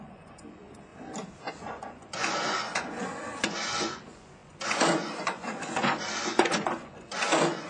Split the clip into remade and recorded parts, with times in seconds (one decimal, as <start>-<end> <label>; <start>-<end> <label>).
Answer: 0.0-0.9 remade; 0.9-1.5 recorded; 1.5-7.7 remade